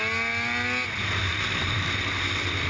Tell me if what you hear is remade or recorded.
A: recorded